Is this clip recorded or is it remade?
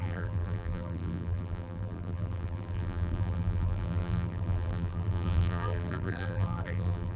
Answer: remade